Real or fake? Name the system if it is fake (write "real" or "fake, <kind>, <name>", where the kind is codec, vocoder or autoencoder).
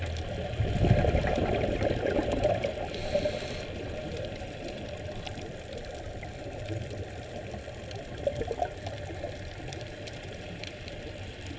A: fake, vocoder, BigVGAN v2